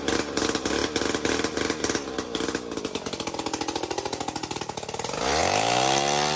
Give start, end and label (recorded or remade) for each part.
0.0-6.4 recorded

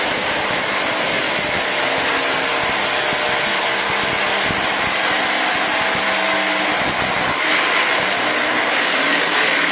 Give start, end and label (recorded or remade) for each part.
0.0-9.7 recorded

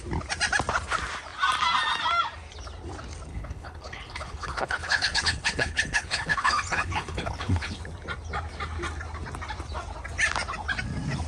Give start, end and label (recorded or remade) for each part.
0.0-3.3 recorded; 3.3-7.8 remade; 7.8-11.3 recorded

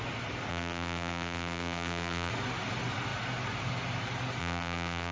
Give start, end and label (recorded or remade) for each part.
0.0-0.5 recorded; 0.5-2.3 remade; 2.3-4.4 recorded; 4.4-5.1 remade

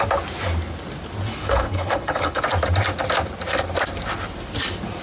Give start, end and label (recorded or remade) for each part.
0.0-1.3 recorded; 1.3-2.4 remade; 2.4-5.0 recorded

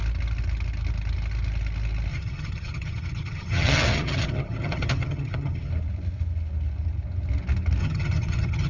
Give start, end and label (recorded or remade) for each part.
0.0-2.1 recorded; 2.1-5.7 remade; 5.7-7.8 recorded; 7.8-8.7 remade

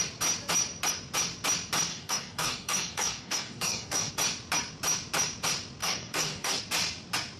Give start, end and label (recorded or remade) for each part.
0.0-1.9 recorded; 1.9-4.1 remade; 4.1-5.8 recorded; 5.8-6.6 remade; 6.6-7.4 recorded